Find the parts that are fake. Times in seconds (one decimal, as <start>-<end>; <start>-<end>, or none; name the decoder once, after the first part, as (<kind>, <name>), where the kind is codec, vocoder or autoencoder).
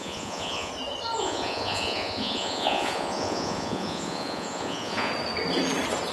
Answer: 0.0-0.7 (vocoder, Vocos); 1.2-5.1